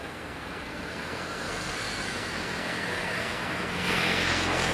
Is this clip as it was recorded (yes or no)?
no